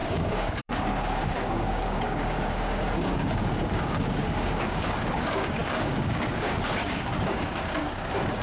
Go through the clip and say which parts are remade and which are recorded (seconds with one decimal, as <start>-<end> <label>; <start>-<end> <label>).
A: 0.0-8.4 remade